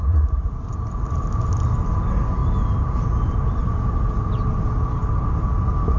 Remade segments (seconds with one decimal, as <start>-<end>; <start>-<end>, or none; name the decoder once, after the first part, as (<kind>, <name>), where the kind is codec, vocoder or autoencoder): 0.0-1.1 (vocoder, BigVGAN v2); 2.4-4.2